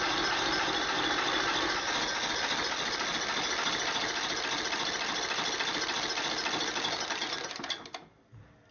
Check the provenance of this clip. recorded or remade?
recorded